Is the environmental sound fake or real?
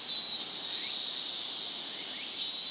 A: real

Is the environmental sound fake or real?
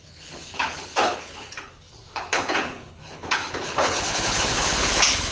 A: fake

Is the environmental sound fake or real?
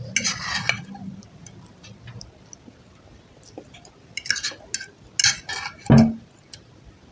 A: real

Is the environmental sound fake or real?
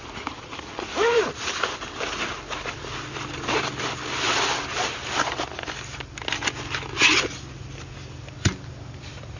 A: real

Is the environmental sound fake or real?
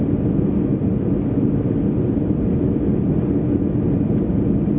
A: real